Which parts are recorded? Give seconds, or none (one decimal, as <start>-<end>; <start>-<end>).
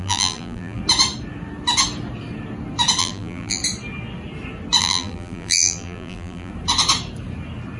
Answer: 0.8-3.0; 3.6-4.8; 6.5-7.8